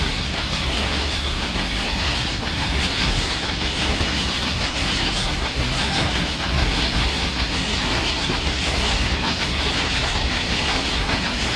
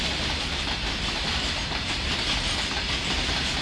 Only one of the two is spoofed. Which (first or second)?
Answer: first